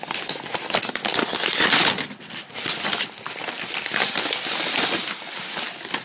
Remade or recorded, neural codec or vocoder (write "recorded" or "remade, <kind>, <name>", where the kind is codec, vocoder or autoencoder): recorded